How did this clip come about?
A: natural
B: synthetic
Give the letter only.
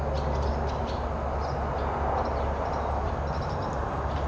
A